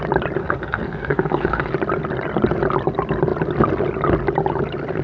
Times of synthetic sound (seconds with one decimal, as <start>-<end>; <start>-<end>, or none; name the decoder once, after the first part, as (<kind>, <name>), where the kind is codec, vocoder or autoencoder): 0.4-1.7 (codec, SNAC)